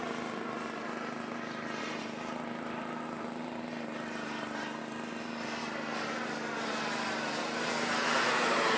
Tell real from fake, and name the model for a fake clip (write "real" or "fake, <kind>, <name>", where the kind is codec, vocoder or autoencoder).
real